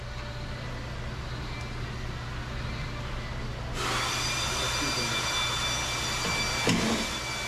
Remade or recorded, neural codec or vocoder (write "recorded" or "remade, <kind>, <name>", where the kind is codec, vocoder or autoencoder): recorded